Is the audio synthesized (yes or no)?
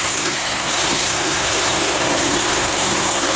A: yes